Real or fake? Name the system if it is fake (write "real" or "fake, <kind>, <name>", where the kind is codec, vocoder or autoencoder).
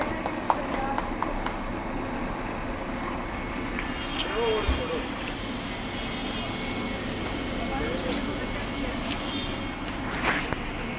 real